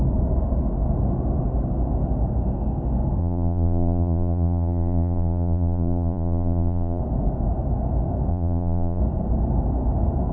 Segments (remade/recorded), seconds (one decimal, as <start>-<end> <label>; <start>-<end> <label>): 0.0-3.2 recorded; 3.2-7.0 remade; 7.0-8.3 recorded; 8.3-9.0 remade; 9.0-10.3 recorded